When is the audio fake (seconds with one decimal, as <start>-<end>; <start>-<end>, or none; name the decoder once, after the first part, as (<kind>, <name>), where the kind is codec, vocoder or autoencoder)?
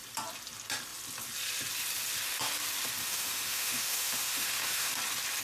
3.0-4.9 (autoencoder, DAC-VAE)